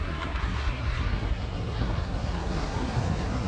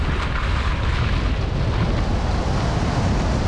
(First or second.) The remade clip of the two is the first